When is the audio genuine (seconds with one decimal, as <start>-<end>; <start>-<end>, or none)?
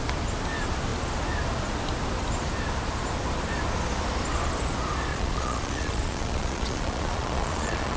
0.0-5.1